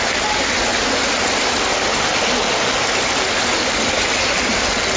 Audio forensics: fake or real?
real